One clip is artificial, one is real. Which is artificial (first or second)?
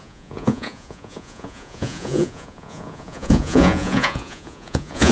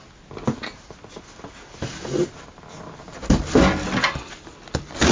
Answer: first